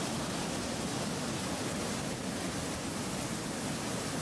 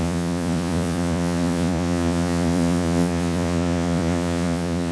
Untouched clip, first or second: first